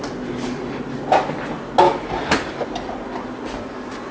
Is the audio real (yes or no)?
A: yes